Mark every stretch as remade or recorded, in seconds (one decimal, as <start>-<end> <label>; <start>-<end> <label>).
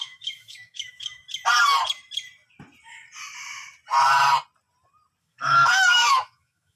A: 0.0-1.2 remade; 1.2-5.2 recorded; 5.2-6.8 remade